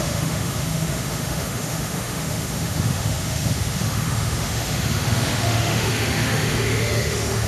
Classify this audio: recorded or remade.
remade